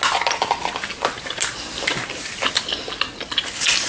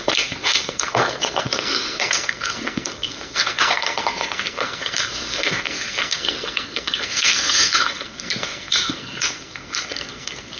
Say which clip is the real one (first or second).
first